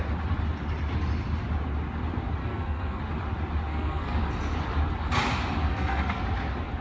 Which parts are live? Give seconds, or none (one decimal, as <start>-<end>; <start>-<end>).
0.0-2.4; 3.0-3.7; 4.2-5.7; 6.2-6.8